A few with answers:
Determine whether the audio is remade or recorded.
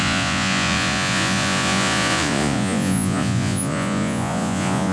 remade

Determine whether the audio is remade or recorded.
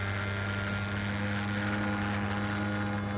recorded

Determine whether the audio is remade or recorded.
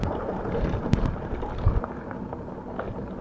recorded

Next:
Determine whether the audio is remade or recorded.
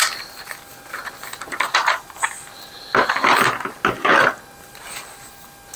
recorded